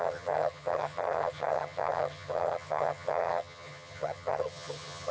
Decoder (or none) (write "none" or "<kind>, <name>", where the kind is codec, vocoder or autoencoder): vocoder, HiFi-GAN